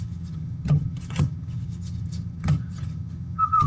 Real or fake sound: fake